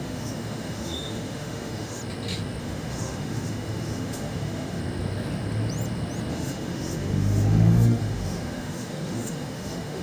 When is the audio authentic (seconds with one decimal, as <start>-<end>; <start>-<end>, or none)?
2.0-2.6; 4.8-6.3